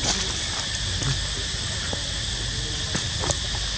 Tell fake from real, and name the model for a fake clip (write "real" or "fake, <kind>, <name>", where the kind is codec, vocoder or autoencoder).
real